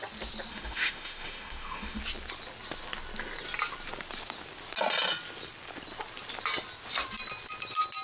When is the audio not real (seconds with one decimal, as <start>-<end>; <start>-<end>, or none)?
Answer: 0.5-2.0